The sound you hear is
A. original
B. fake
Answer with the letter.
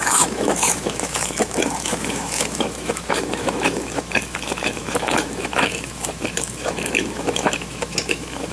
B